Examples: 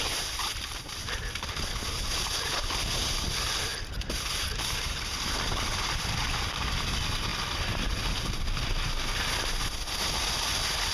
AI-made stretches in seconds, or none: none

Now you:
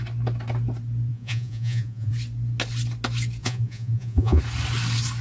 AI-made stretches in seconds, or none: 1.1-2.1 (vocoder, Vocos); 3.4-4.4

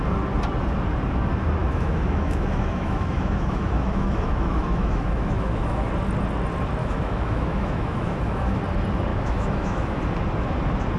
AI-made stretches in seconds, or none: 1.6-5.9 (autoencoder, DAC-VAE); 6.8-8.6; 9.1-10.0

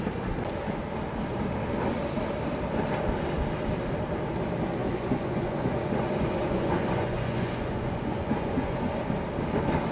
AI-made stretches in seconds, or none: 4.8-8.9 (vocoder, Vocos)

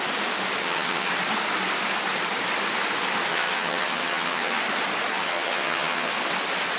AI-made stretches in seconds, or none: 0.6-1.1 (vocoder, HiFi-GAN); 3.3-4.6; 5.1-6.1

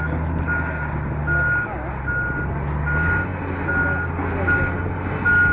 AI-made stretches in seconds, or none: none